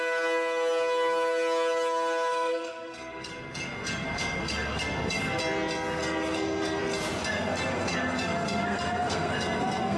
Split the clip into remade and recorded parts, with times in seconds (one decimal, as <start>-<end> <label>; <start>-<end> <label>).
0.0-2.3 recorded; 2.3-5.4 remade; 5.4-6.0 recorded; 6.0-6.8 remade; 6.8-7.3 recorded; 7.3-10.0 remade

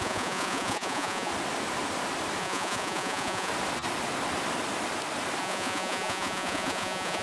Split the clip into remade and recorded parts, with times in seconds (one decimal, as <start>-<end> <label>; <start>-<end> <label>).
0.0-1.3 remade; 1.3-2.4 recorded; 2.4-3.5 remade; 3.5-5.4 recorded; 5.4-7.2 remade